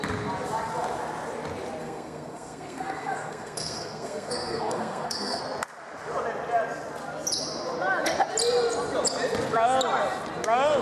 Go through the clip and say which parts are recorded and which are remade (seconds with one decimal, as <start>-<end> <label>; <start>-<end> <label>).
0.0-1.8 recorded; 1.8-5.4 remade; 5.4-10.8 recorded